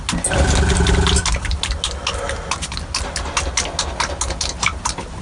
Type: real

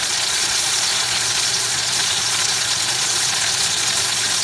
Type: fake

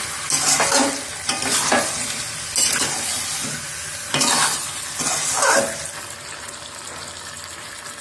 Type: real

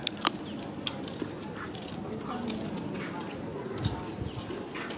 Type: real